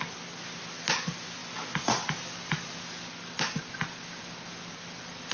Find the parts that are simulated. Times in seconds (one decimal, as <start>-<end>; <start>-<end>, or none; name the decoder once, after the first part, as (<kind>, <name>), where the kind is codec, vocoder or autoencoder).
none

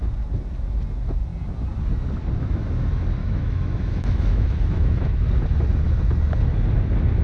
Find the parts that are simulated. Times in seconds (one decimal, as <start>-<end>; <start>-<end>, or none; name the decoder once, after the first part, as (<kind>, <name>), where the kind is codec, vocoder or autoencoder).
3.2-5.3 (autoencoder, DAC-VAE)